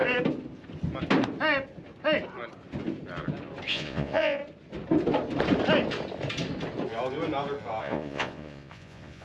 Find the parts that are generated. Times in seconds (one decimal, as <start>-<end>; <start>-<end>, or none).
3.7-4.4; 7.8-9.2